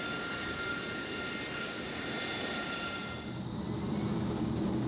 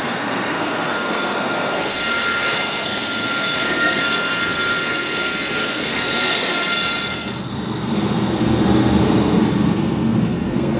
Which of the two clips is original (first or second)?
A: first